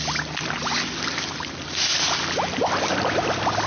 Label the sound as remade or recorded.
recorded